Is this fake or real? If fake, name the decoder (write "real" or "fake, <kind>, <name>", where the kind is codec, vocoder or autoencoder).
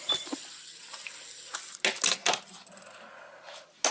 real